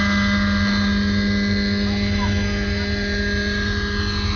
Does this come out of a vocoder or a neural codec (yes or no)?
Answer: no